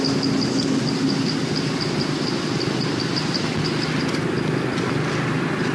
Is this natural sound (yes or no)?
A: yes